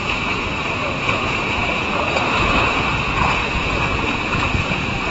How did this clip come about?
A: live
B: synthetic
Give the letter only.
B